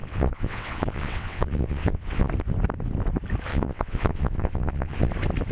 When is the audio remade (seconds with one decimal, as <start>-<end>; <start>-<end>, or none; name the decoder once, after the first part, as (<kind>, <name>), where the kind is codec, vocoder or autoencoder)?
0.0-2.3 (vocoder, WaveNeXt); 3.5-5.1